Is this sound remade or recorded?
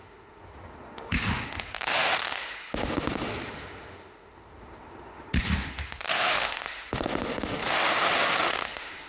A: remade